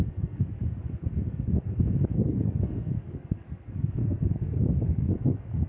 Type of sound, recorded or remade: remade